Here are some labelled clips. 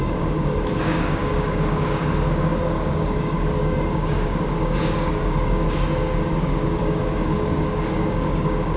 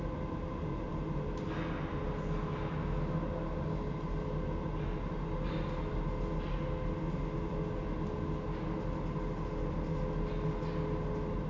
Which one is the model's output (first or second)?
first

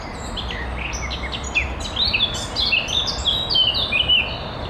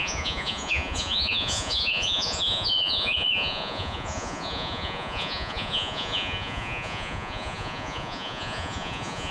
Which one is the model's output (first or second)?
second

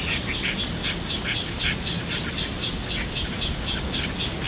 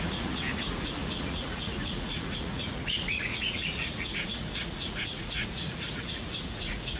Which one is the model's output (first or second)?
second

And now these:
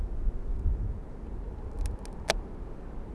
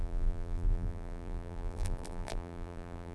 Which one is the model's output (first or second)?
second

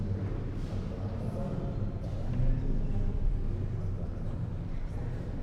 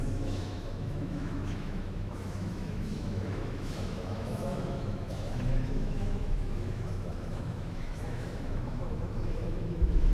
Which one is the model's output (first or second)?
second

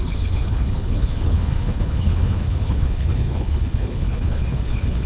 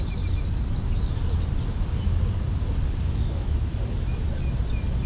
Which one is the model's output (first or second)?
first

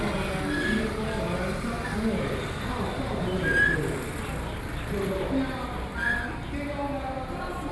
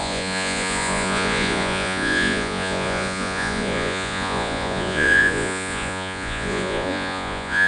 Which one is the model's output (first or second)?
second